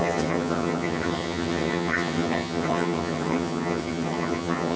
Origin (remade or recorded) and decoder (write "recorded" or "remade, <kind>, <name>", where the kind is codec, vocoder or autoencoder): remade, vocoder, HiFi-GAN